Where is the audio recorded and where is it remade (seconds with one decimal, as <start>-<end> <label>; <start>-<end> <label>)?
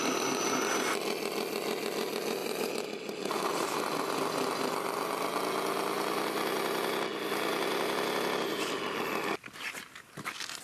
0.0-2.4 recorded; 2.4-3.8 remade; 3.8-10.6 recorded